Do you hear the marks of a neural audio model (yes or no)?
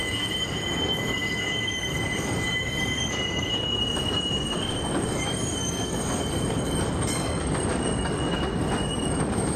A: yes